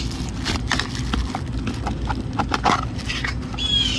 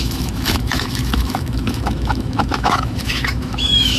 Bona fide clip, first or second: first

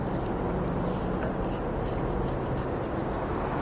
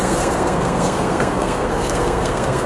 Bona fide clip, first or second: first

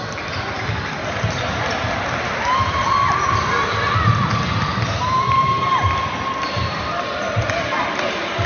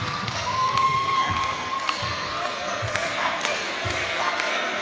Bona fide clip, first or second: first